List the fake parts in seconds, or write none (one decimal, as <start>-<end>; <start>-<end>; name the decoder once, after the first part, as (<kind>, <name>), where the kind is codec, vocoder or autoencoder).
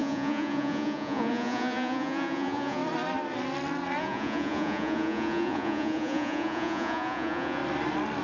0.0-2.8 (vocoder, Vocos); 4.0-7.6